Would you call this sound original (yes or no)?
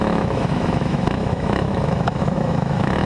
no